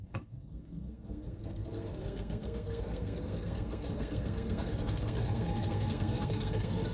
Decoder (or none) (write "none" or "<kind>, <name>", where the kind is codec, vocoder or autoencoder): codec, SNAC